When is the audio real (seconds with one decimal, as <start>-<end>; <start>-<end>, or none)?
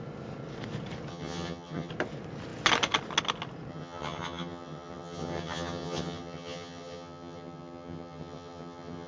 0.0-1.1; 1.9-3.7